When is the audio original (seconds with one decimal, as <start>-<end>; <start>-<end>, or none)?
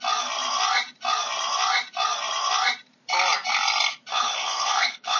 0.0-4.1